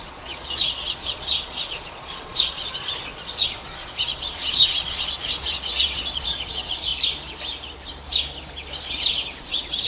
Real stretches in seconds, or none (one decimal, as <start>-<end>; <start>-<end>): 6.9-9.4